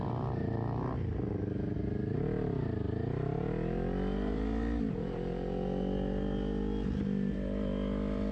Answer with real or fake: real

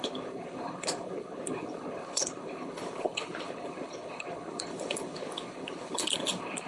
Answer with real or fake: fake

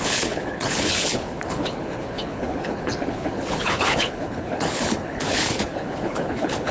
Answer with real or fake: fake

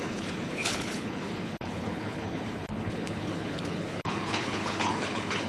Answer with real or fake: fake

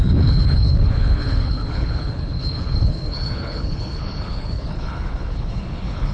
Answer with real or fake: fake